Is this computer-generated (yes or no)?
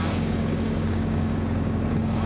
yes